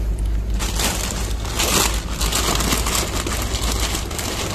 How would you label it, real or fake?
real